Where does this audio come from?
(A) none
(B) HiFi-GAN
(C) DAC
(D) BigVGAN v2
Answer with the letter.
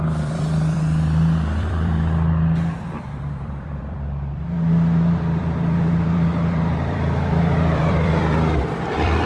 D